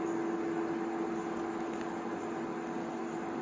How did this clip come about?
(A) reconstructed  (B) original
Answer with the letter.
B